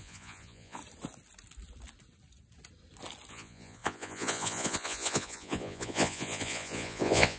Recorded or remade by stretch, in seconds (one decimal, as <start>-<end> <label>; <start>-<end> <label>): 0.0-0.8 remade; 0.8-3.3 recorded; 3.3-7.4 remade